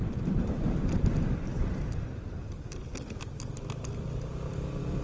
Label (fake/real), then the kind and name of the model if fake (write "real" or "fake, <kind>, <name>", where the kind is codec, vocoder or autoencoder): real